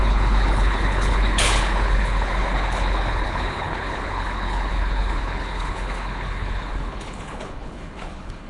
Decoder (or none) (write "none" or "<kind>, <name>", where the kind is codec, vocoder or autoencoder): codec, HILCodec